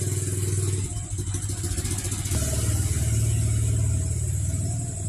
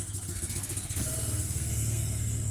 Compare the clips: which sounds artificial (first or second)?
second